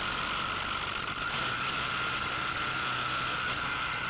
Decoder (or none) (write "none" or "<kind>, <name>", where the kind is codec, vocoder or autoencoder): none